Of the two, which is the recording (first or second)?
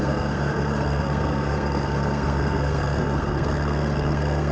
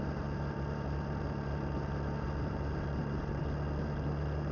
second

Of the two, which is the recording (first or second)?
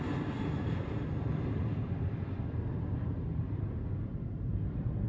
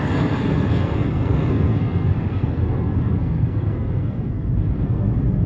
first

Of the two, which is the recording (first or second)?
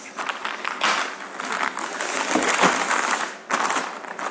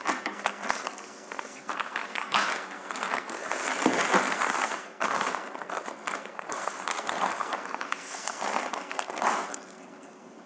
first